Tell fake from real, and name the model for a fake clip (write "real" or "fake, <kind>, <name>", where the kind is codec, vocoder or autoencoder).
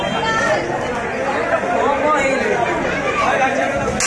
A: real